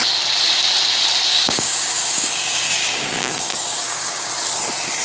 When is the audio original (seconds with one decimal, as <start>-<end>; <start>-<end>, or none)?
0.0-1.3; 4.3-5.0